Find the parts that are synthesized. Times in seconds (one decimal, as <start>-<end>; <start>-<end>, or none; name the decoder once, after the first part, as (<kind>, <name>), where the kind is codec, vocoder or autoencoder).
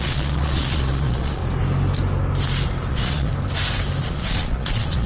0.0-1.4 (vocoder, Vocos); 2.9-3.3; 4.0-5.1